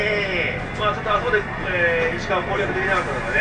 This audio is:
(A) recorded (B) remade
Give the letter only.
A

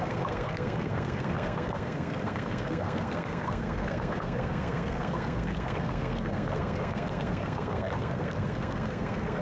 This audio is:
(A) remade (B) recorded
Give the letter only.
A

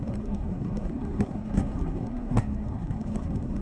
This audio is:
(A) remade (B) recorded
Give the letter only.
A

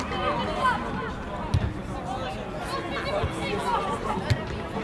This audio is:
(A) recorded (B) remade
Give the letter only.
A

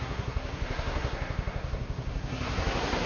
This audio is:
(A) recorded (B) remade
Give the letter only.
B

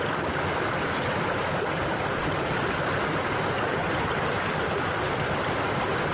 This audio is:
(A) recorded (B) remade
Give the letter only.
A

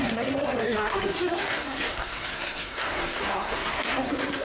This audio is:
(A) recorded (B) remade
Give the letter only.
B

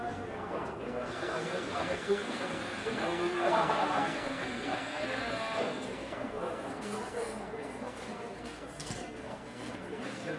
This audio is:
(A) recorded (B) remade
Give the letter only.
B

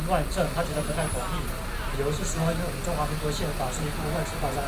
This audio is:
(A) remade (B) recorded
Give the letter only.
B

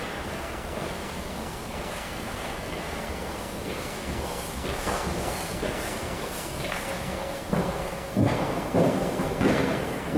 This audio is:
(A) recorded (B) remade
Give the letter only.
B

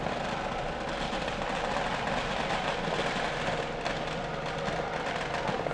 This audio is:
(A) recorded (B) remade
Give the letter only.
A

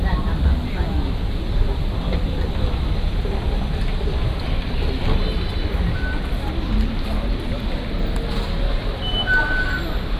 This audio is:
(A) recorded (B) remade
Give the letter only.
A